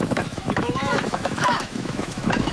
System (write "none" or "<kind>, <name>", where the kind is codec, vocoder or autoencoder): autoencoder, DAC-VAE